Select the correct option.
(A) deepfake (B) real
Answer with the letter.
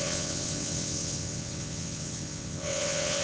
A